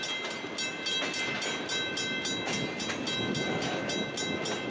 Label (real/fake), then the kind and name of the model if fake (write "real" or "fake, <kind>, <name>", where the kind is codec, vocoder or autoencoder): real